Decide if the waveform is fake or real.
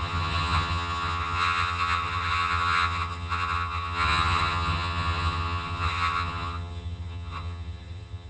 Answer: fake